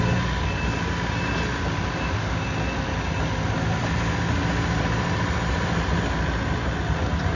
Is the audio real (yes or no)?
yes